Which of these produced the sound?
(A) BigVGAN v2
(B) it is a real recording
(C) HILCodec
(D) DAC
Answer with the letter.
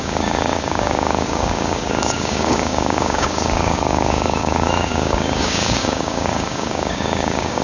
D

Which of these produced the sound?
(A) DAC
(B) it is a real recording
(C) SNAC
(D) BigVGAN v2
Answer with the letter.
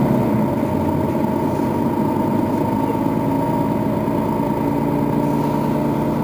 B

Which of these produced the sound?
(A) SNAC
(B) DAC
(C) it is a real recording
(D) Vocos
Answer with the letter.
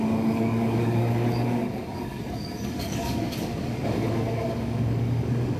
B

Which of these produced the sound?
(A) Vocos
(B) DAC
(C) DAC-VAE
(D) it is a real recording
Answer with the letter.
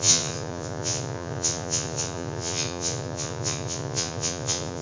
A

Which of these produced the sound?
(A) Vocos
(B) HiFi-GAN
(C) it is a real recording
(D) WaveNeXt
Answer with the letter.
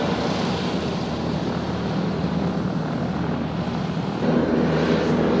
C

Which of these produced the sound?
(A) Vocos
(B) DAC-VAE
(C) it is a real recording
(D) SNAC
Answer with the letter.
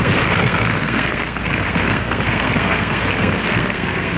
D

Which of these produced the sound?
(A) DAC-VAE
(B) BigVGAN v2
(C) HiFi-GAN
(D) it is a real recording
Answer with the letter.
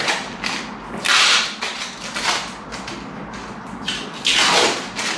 D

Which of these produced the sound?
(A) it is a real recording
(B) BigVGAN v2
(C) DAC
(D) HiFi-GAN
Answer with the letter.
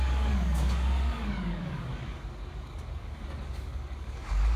C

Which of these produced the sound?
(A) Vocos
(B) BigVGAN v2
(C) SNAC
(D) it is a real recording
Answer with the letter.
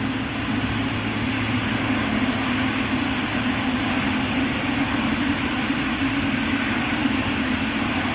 D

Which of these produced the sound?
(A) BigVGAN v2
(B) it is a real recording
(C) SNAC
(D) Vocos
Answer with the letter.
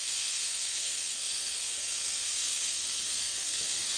C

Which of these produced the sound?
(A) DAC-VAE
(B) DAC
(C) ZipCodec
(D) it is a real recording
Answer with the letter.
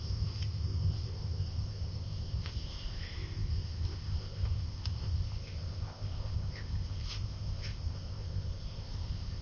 C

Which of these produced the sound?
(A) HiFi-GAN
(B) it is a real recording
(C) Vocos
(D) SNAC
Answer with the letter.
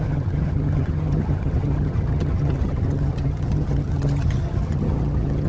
A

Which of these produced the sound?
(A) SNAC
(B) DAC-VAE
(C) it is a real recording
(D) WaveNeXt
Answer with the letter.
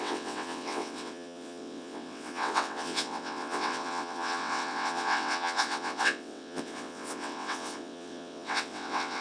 D